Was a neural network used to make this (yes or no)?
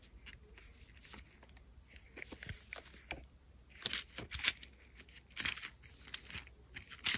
no